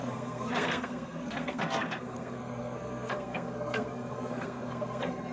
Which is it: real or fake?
fake